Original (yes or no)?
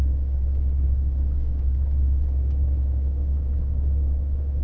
no